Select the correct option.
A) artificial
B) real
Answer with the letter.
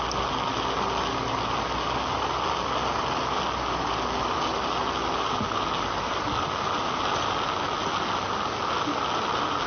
B